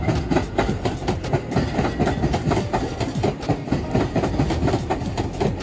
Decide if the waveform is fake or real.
real